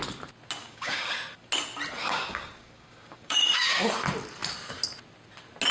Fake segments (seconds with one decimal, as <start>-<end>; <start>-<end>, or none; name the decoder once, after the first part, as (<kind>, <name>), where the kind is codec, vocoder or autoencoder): 0.6-1.1 (codec, DAC); 2.0-3.9